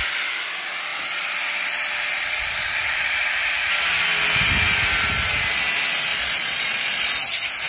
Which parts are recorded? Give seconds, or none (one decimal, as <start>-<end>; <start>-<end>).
0.0-2.1; 3.2-6.1; 7.1-7.7